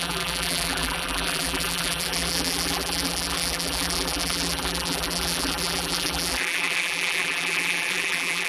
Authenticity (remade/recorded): remade